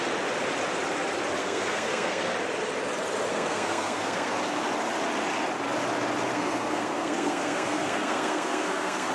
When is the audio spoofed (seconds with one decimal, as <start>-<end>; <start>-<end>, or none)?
1.4-2.2; 3.3-4.3; 6.3-9.1